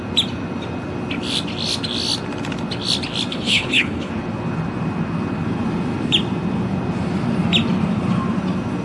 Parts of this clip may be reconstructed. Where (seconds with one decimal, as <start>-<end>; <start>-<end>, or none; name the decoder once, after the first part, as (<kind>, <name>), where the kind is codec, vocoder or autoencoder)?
3.3-4.1 (codec, HILCodec)